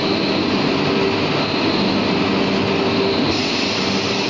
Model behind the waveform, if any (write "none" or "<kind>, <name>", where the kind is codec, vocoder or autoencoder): none